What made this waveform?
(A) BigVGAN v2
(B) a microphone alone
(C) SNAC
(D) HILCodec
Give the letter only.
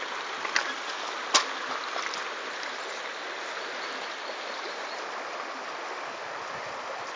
B